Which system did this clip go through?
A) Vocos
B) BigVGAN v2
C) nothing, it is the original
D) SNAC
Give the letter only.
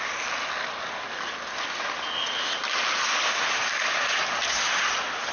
C